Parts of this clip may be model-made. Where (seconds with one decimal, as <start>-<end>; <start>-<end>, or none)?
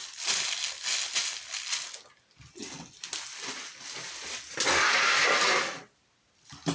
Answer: none